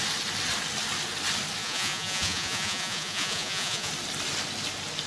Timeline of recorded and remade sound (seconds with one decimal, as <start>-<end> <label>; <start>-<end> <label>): 0.0-1.6 recorded; 1.6-3.9 remade; 3.9-5.1 recorded